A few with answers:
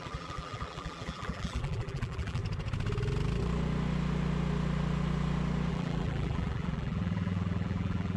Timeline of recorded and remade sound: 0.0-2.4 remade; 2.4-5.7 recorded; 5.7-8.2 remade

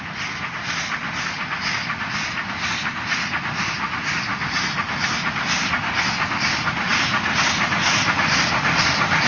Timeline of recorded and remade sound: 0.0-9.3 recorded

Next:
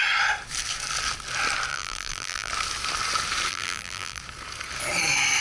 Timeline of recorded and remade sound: 0.0-1.7 recorded; 1.7-2.5 remade; 2.5-3.5 recorded; 3.5-4.2 remade; 4.2-5.4 recorded

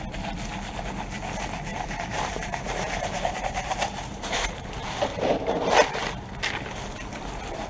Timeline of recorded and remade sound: 0.0-1.7 recorded; 1.7-6.3 remade; 6.3-7.7 recorded